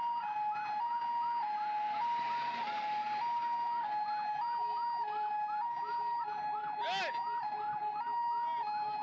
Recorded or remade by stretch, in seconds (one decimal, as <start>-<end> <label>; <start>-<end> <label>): 0.0-9.0 recorded